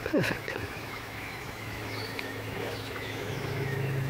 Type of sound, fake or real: fake